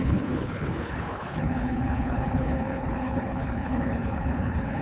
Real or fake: fake